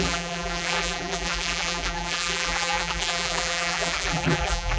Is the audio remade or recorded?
remade